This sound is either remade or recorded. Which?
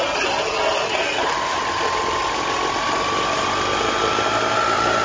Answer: recorded